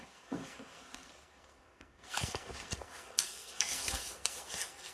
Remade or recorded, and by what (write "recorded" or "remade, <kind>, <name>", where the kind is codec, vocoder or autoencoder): remade, codec, SNAC